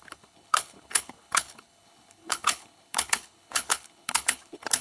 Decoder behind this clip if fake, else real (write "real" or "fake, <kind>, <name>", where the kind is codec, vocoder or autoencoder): fake, codec, HILCodec